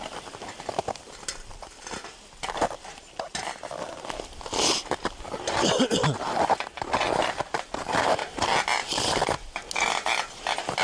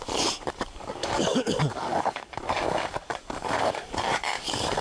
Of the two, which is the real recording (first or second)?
first